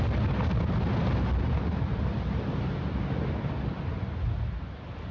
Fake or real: real